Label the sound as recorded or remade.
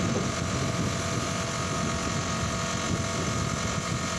recorded